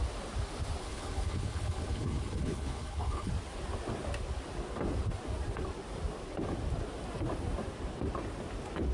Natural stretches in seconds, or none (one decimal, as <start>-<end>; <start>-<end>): 0.0-0.8; 3.3-8.9